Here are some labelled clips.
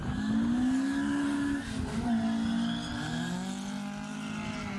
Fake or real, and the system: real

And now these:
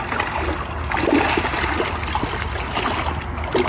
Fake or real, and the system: real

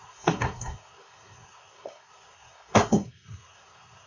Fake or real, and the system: fake, codec, SNAC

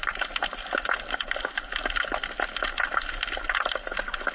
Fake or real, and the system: real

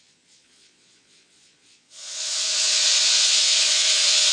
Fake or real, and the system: fake, vocoder, Vocos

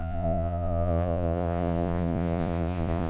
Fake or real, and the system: fake, vocoder, Vocos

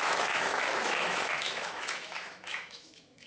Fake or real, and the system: fake, autoencoder, DAC-VAE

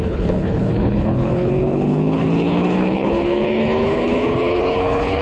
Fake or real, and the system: fake, codec, HILCodec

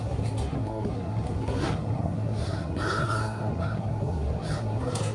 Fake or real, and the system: fake, codec, SNAC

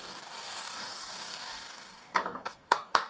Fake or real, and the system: fake, codec, DAC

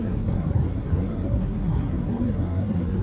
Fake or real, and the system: fake, codec, SNAC